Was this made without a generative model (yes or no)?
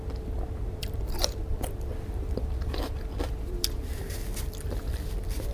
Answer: no